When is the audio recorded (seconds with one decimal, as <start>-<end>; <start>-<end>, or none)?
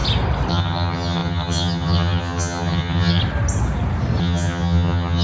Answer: 0.0-0.5; 3.2-4.2